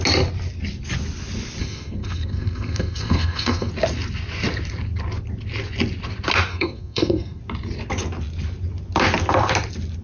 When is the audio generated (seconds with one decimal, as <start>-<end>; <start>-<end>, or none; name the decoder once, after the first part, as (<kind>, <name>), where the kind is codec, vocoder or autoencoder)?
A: 1.6-3.7 (codec, SNAC); 6.5-7.4